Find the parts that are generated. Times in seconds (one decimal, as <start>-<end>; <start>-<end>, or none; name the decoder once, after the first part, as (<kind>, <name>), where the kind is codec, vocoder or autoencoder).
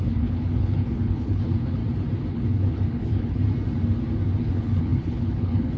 0.0-1.8 (codec, HILCodec); 2.3-3.4; 4.4-5.8